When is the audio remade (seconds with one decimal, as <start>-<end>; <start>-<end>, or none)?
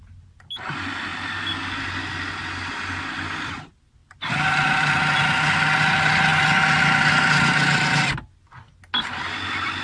none